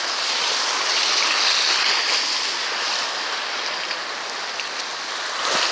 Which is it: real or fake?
real